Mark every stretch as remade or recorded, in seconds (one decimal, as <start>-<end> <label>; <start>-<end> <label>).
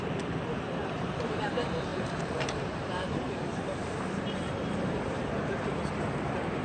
0.0-6.6 remade